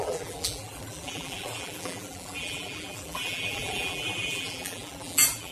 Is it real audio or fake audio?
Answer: fake